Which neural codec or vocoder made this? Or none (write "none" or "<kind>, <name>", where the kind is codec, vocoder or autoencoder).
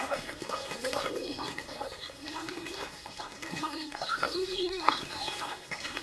codec, SNAC